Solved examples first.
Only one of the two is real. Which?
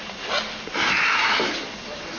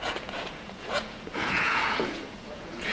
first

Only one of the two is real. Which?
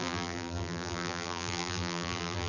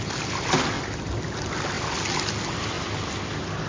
second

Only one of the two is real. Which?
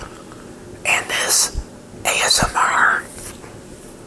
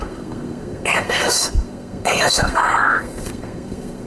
first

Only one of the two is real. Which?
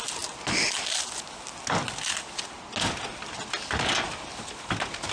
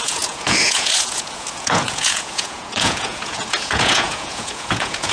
first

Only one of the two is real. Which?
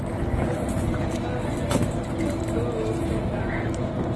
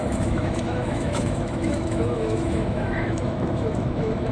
first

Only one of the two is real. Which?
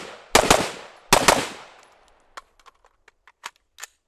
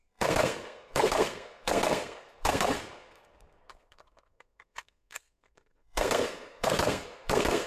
first